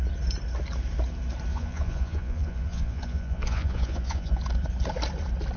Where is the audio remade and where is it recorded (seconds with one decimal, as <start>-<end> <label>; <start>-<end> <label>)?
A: 0.0-1.5 recorded; 1.5-4.4 remade; 4.4-5.6 recorded